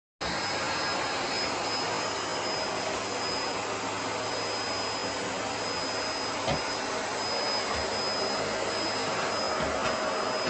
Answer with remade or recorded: recorded